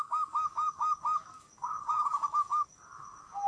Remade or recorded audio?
remade